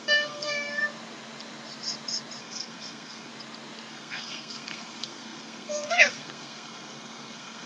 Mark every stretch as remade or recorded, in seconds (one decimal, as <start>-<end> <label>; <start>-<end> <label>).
0.0-0.8 remade; 0.8-2.4 recorded; 2.4-3.3 remade; 3.3-3.9 recorded; 3.9-7.7 remade